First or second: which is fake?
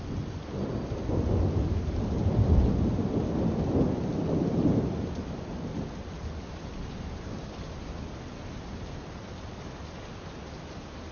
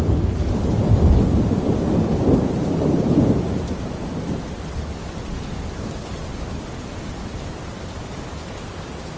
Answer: second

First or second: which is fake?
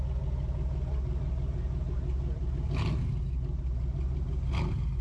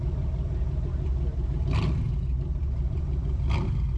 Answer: second